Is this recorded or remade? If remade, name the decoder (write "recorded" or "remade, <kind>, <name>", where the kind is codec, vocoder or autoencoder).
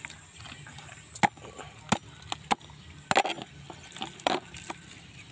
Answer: recorded